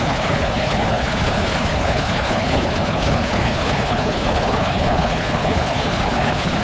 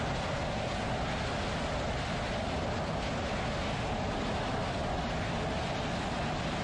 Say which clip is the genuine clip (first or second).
second